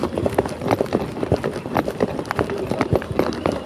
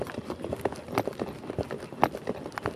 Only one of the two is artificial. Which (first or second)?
first